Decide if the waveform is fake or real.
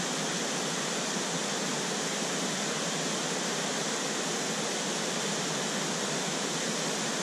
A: real